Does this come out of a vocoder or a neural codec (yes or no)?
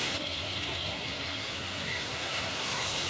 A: yes